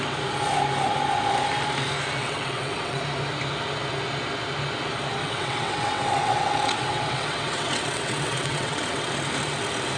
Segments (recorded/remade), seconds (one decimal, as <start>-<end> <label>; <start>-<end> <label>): 0.0-2.2 recorded; 2.2-3.0 remade; 3.0-5.2 recorded; 5.2-9.1 remade; 9.1-10.0 recorded